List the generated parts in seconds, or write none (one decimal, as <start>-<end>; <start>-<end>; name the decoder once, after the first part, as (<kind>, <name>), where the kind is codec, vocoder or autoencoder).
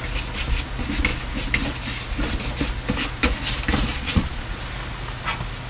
3.9-4.6 (vocoder, Vocos)